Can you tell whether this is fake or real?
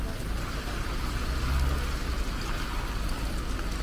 real